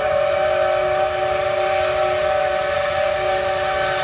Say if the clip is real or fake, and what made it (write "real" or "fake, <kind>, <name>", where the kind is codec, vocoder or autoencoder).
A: real